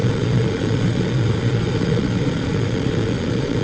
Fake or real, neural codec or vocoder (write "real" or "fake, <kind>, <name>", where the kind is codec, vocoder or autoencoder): fake, vocoder, Vocos